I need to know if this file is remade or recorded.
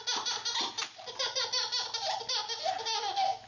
recorded